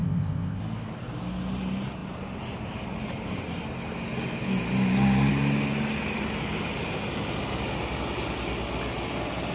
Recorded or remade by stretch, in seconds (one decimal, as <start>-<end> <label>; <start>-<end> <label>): 0.0-0.6 remade; 0.6-9.5 recorded